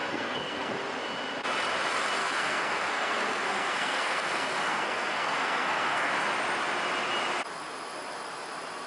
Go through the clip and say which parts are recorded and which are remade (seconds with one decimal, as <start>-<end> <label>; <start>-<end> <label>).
0.0-0.7 remade; 0.7-2.2 recorded; 2.2-6.1 remade; 6.1-8.9 recorded